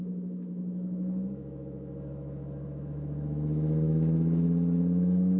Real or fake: fake